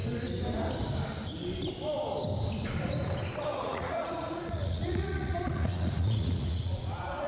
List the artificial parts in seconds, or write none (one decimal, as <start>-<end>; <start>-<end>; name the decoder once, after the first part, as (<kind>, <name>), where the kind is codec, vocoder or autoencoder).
3.5-7.3 (vocoder, Vocos)